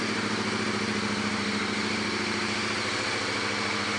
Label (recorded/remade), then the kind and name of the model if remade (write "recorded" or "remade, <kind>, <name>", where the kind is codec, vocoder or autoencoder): recorded